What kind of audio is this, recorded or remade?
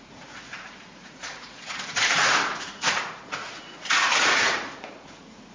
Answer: remade